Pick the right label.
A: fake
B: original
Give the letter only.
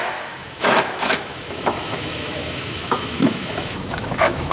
A